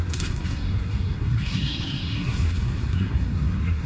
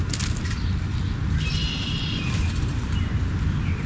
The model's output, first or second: first